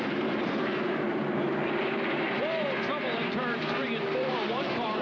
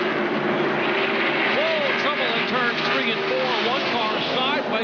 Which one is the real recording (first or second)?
second